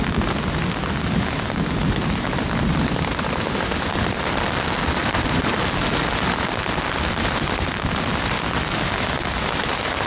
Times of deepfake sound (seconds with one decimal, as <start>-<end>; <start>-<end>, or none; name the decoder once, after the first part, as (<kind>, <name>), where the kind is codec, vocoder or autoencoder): 5.0-5.5 (vocoder, BigVGAN v2)